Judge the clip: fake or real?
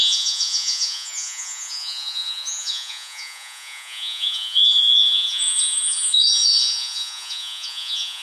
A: fake